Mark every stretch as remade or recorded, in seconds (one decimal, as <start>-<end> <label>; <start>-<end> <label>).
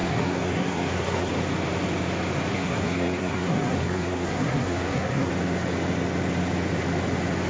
0.0-1.3 remade; 1.3-2.5 recorded; 2.5-5.3 remade; 5.3-7.5 recorded